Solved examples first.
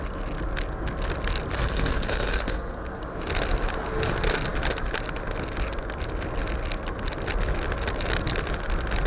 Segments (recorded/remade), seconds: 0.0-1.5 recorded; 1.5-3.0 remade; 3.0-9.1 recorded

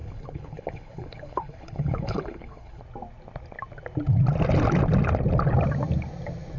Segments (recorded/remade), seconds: 0.0-2.8 remade; 2.8-6.6 recorded

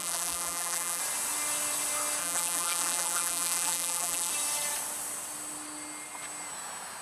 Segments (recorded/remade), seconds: 0.0-1.0 remade; 1.0-2.2 recorded; 2.2-4.3 remade; 4.3-7.0 recorded

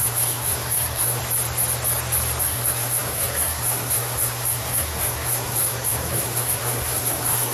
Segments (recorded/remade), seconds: 0.0-1.2 remade; 1.2-2.4 recorded; 2.4-7.5 remade

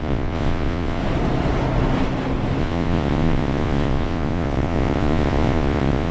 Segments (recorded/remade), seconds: 0.0-1.0 remade; 1.0-2.6 recorded; 2.6-6.1 remade

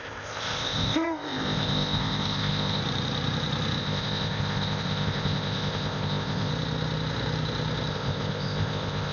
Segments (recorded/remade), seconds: 0.0-2.8 remade; 2.8-3.8 recorded; 3.8-6.5 remade; 6.5-7.9 recorded; 7.9-9.1 remade

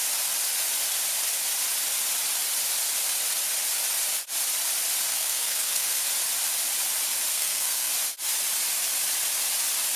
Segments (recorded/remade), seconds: 0.0-5.1 recorded; 5.1-6.0 remade; 6.0-7.3 recorded; 7.3-7.9 remade; 7.9-10.0 recorded